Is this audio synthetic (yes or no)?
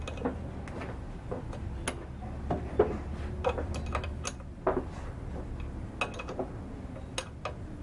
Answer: no